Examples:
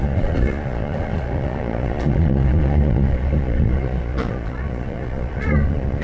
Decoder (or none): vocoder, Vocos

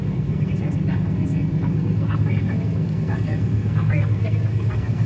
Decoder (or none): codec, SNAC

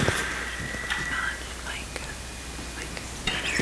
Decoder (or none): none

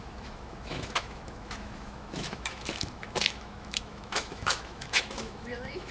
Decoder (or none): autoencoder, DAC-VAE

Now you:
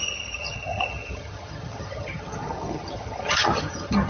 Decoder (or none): vocoder, HiFi-GAN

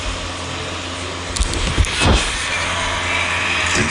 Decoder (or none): none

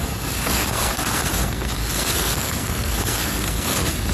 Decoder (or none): codec, SNAC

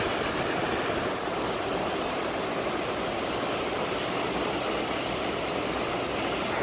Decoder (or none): none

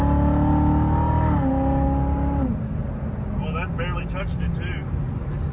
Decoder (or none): none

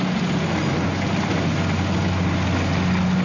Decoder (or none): none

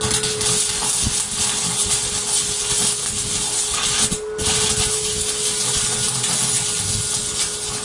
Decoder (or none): none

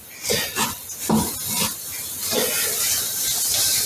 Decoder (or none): none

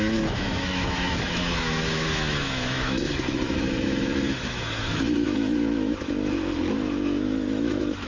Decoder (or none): autoencoder, DAC-VAE